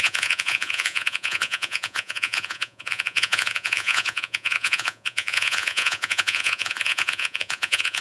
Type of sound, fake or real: fake